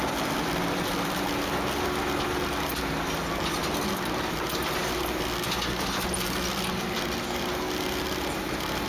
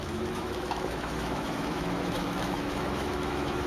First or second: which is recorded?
first